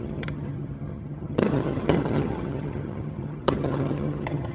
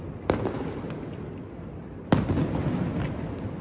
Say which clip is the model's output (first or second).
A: first